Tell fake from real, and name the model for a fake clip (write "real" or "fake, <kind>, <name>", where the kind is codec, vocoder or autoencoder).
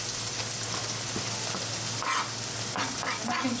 real